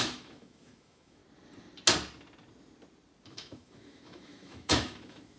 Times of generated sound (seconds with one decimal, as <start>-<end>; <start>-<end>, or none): 0.0-1.2; 3.3-5.4